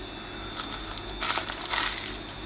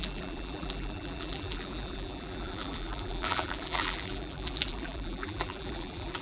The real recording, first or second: first